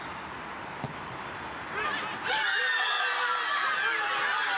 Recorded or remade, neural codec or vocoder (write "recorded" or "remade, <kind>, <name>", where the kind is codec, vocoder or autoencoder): recorded